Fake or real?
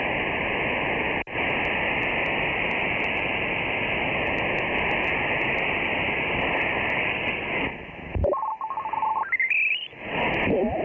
real